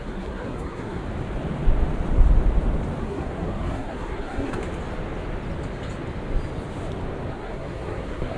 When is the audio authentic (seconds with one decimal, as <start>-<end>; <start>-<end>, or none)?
1.0-3.0; 4.6-7.3